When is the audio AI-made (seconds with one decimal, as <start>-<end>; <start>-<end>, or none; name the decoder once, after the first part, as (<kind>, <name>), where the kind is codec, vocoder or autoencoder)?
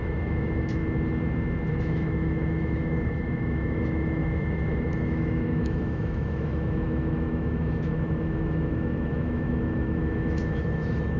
0.0-0.8 (autoencoder, DAC-VAE); 1.7-11.2